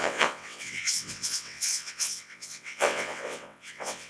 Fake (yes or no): yes